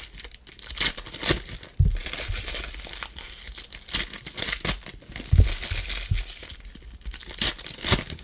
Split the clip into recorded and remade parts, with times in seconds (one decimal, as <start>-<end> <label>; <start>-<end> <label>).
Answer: 0.0-8.2 recorded